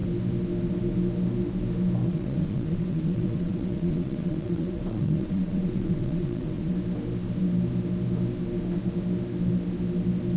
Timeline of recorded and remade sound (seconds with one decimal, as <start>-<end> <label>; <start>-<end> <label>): 0.0-2.0 recorded; 2.0-6.7 remade; 6.7-10.4 recorded